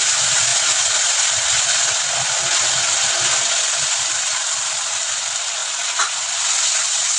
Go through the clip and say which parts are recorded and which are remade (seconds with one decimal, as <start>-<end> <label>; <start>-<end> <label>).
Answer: 0.0-7.2 recorded

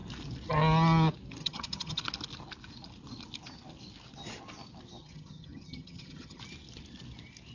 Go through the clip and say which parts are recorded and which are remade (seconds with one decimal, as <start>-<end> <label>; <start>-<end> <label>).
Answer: 0.0-1.4 recorded; 1.4-2.0 remade; 2.0-5.0 recorded; 5.0-6.4 remade; 6.4-7.5 recorded